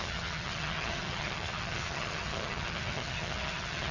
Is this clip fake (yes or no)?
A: yes